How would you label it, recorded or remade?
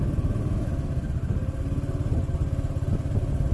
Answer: recorded